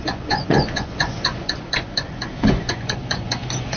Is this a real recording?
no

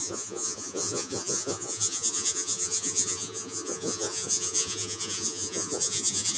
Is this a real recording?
no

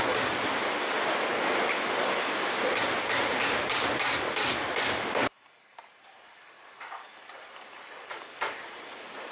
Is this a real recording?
yes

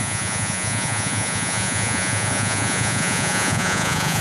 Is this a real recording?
no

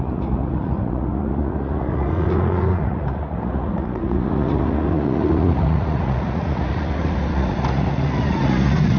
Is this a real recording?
no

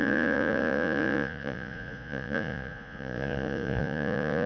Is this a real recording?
no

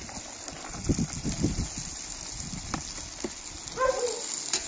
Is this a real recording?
yes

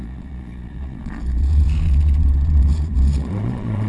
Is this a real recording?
no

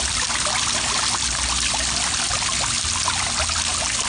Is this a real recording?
yes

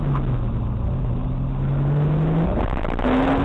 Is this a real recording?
yes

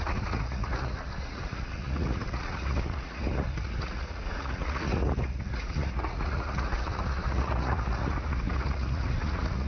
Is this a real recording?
no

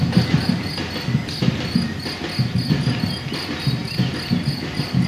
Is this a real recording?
yes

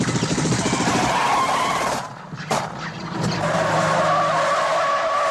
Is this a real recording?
yes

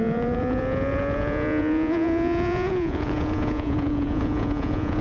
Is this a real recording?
no